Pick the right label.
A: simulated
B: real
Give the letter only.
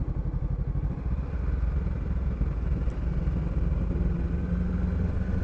B